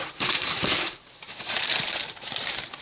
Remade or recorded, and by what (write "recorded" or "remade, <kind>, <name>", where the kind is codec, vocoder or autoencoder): remade, vocoder, BigVGAN v2